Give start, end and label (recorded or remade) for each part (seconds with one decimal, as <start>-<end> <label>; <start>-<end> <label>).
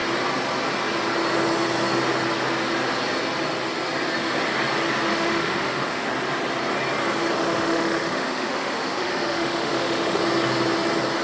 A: 0.0-5.1 recorded; 5.1-6.1 remade; 6.1-7.3 recorded; 7.3-10.2 remade; 10.2-11.2 recorded